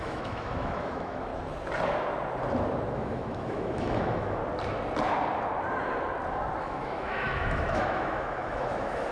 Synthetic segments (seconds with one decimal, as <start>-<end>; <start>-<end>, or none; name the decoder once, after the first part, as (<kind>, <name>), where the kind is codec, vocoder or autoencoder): 0.0-1.3 (autoencoder, DAC-VAE); 2.9-4.4; 6.6-9.1